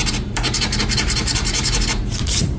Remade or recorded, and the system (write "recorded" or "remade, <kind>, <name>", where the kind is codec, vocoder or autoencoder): remade, vocoder, BigVGAN v2